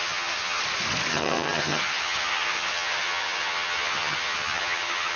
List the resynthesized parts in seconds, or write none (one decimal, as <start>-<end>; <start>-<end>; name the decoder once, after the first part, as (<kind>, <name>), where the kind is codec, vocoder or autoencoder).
0.0-0.6 (vocoder, HiFi-GAN); 1.1-5.2